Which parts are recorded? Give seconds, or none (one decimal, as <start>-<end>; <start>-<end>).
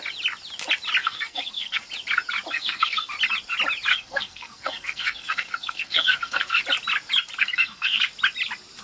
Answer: 0.0-1.0; 1.8-2.5; 3.1-3.9; 6.6-7.4; 8.0-8.8